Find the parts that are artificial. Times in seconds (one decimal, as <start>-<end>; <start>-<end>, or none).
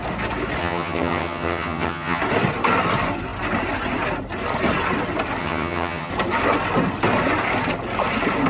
0.6-2.2; 5.4-6.1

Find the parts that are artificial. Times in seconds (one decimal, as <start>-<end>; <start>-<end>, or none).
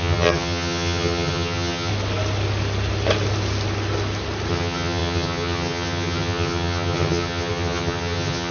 0.0-1.9; 4.5-8.5